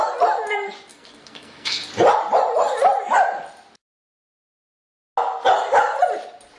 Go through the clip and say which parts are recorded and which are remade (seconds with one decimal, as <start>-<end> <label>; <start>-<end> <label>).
0.0-0.9 recorded; 0.9-1.9 remade; 1.9-6.6 recorded